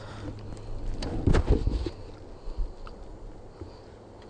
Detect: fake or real real